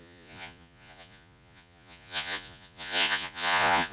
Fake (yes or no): yes